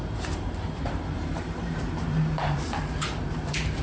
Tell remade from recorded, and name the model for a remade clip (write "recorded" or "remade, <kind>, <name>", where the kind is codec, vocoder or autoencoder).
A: remade, vocoder, BigVGAN v2